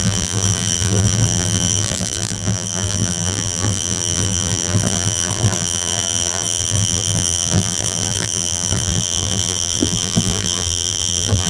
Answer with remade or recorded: remade